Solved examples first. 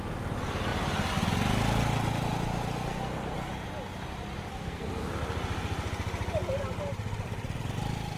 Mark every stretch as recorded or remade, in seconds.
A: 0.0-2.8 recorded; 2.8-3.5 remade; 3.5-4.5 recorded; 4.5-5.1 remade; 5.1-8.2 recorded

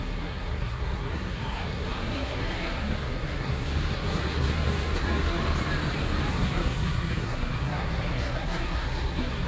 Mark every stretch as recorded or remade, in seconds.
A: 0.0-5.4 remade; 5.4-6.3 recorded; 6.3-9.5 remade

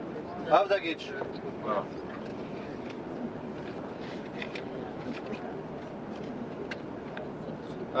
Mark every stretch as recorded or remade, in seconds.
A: 0.0-8.0 recorded

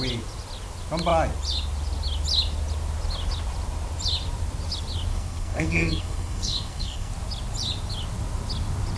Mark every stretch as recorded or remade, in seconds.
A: 0.0-5.1 recorded; 5.1-7.1 remade; 7.1-9.0 recorded

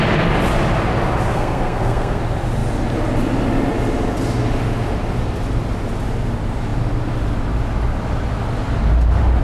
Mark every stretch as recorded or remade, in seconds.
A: 0.0-1.3 recorded; 1.3-2.2 remade; 2.2-9.4 recorded

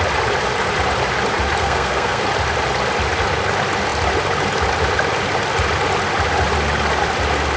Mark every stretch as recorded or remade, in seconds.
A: 0.0-1.6 recorded; 1.6-2.2 remade; 2.2-7.6 recorded

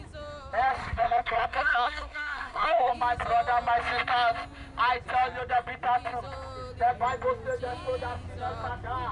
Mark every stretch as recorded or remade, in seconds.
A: 0.0-0.8 recorded; 0.8-2.9 remade; 2.9-9.1 recorded